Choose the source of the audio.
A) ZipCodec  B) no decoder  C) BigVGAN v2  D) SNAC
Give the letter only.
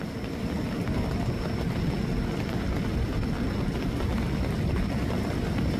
C